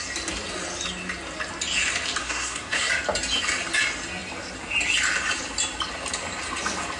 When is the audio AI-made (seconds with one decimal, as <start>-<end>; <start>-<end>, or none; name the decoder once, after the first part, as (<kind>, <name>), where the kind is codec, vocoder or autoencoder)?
2.2-2.9 (codec, SNAC)